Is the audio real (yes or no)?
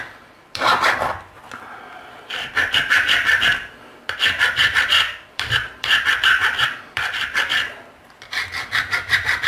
no